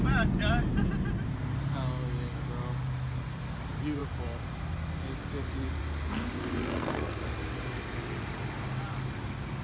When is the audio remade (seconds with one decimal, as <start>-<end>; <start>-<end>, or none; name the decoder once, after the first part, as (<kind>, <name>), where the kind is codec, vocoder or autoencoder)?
6.5-7.2 (codec, SNAC)